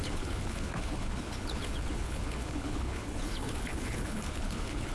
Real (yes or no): no